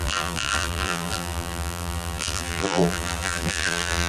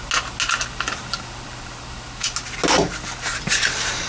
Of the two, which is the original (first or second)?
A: second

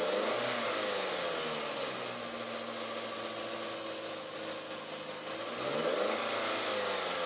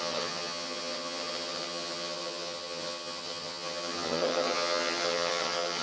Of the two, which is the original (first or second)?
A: first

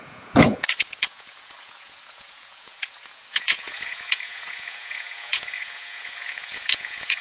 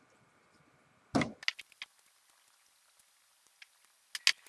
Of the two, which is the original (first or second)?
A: second